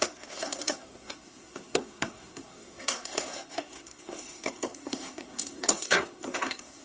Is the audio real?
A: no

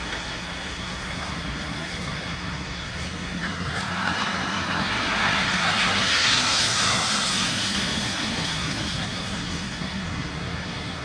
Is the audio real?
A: no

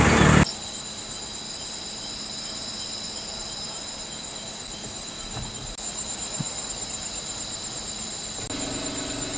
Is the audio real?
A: yes